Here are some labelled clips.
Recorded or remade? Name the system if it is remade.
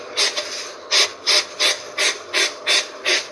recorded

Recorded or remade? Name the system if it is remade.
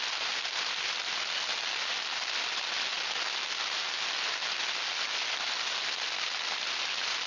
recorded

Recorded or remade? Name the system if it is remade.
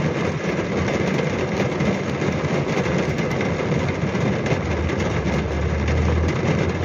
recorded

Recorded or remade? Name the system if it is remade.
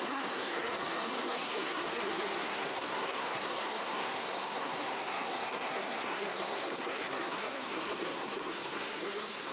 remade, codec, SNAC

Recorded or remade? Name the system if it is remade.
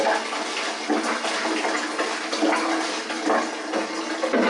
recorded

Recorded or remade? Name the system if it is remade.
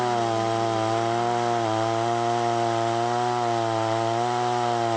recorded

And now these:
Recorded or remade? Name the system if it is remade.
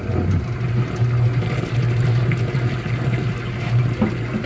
recorded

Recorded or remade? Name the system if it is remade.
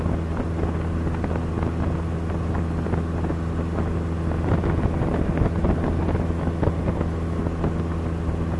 recorded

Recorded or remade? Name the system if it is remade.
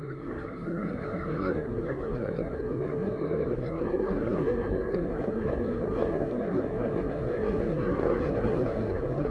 remade, codec, SNAC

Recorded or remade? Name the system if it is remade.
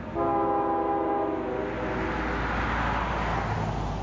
recorded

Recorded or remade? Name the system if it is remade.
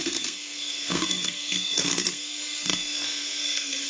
remade, codec, SNAC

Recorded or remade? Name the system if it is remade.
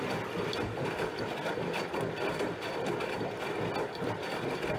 recorded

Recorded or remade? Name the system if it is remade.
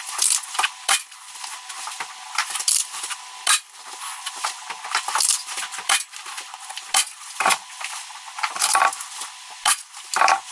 recorded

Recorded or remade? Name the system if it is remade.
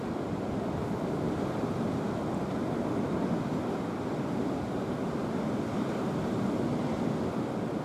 recorded